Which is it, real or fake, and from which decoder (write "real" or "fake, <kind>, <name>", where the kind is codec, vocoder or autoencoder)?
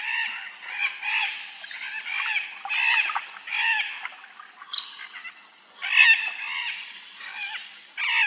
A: real